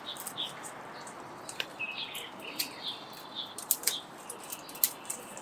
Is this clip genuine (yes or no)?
yes